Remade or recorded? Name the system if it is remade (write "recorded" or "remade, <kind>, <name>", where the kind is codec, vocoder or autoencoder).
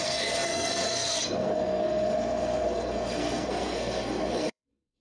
remade, codec, SNAC